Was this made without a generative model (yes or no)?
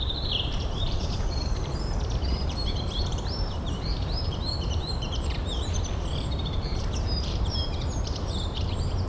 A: no